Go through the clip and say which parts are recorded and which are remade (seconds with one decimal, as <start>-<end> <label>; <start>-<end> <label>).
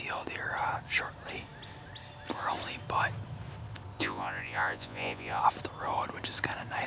0.0-4.0 recorded; 4.0-5.4 remade; 5.4-6.9 recorded